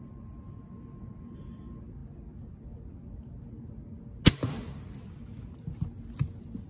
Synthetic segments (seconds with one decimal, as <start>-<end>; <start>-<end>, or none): none